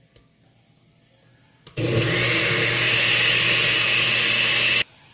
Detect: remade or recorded recorded